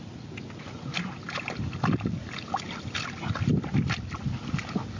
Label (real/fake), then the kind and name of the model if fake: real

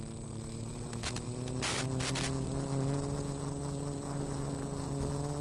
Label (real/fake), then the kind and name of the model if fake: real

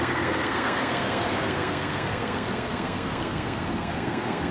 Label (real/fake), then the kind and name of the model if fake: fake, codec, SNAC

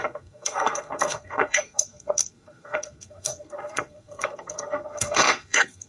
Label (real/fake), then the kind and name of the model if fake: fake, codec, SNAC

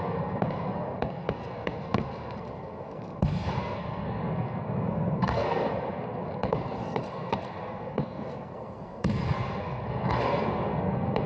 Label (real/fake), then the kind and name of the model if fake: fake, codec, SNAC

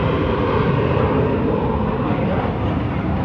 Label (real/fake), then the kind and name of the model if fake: real